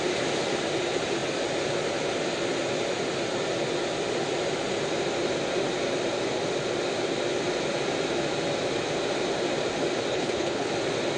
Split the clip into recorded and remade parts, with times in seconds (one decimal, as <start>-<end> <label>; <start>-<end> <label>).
0.0-10.1 recorded; 10.1-10.7 remade; 10.7-11.2 recorded